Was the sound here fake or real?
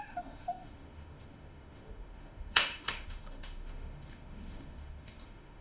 fake